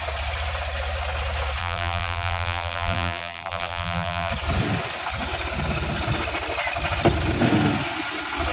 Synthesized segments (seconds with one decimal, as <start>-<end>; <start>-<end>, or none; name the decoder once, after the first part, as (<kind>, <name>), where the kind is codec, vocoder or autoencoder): 1.6-4.3 (vocoder, BigVGAN v2)